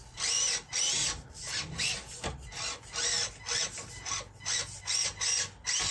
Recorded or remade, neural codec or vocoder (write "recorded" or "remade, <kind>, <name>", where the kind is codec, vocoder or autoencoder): recorded